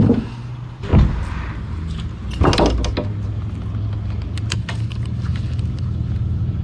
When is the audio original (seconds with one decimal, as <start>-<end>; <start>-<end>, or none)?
0.9-4.5; 5.3-5.8